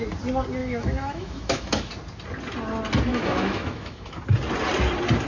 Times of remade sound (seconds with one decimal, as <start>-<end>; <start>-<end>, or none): 0.6-1.9; 3.1-4.2